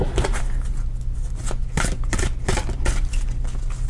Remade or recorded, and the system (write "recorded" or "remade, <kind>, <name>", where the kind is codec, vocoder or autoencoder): recorded